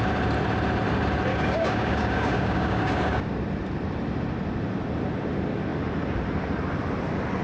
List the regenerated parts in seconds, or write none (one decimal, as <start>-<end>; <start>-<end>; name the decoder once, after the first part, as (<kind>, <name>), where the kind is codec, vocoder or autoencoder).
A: 1.3-3.3 (codec, DAC)